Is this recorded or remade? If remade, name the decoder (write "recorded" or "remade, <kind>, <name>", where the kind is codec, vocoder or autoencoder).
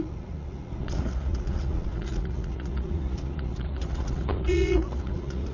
remade, vocoder, Vocos